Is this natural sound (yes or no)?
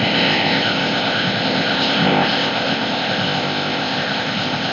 no